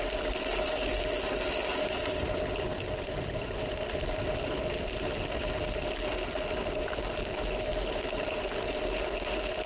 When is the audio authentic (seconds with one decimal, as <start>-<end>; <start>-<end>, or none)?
0.0-9.7